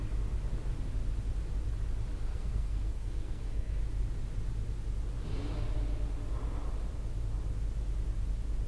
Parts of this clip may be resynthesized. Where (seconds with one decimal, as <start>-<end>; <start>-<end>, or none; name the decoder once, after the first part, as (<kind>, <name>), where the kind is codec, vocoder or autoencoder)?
2.3-3.8 (codec, SNAC)